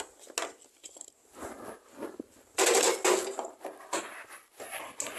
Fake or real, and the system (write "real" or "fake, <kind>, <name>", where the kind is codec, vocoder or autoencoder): real